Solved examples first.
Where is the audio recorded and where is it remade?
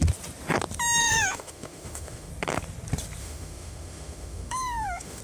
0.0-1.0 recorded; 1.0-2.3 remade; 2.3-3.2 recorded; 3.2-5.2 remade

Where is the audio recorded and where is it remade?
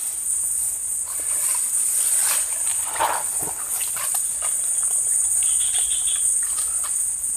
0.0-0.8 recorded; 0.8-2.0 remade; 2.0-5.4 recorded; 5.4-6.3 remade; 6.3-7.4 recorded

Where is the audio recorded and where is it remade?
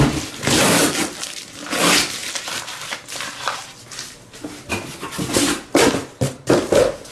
0.0-7.1 recorded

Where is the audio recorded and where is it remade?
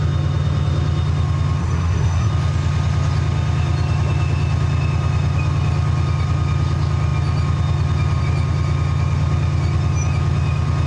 0.0-1.6 recorded; 1.6-2.3 remade; 2.3-10.9 recorded